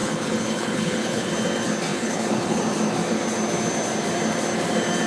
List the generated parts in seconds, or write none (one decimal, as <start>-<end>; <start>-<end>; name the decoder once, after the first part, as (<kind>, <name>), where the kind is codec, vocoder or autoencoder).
0.0-1.3 (codec, HILCodec); 1.9-2.6